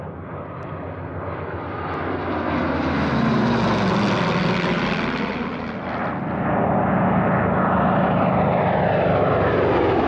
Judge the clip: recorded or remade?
recorded